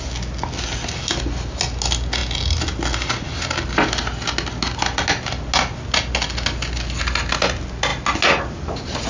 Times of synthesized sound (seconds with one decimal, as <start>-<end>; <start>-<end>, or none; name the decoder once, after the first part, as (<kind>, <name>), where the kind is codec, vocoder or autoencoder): none